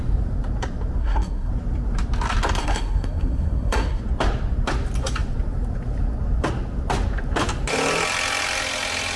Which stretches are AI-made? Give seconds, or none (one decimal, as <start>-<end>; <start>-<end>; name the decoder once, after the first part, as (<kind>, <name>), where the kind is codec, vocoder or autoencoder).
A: 1.0-1.5 (codec, SNAC); 2.6-4.0